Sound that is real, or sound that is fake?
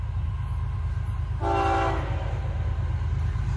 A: real